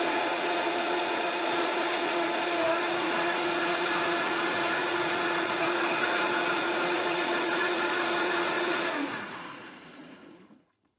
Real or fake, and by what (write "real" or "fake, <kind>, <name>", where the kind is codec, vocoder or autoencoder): fake, vocoder, Vocos